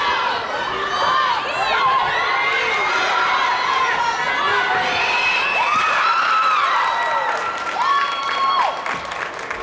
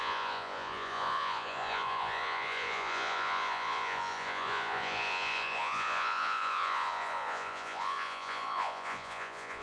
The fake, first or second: second